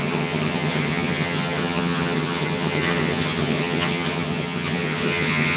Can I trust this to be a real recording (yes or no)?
no